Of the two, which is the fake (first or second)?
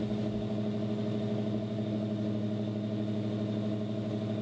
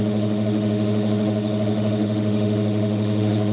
second